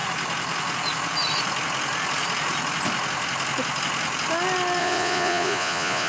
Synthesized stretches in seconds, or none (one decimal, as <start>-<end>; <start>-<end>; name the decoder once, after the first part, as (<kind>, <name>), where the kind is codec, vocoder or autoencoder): 4.8-6.1 (vocoder, Vocos)